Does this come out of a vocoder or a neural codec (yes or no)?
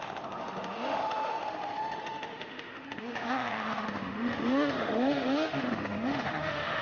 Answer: yes